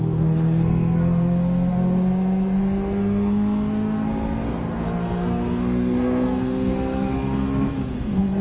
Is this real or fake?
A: fake